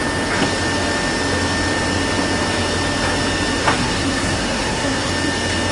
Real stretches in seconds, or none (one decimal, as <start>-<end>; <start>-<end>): 0.0-3.6; 5.1-5.7